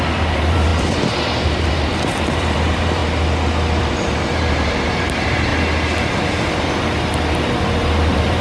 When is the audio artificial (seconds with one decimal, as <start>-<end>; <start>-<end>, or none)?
0.0-3.0; 3.8-5.5; 7.6-8.4